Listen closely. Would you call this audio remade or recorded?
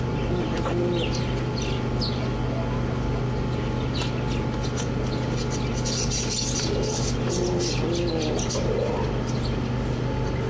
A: recorded